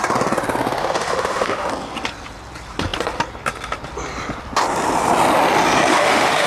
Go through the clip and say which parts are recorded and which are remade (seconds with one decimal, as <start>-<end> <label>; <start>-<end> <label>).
0.0-0.8 recorded; 0.8-1.7 remade; 1.7-5.9 recorded; 5.9-6.5 remade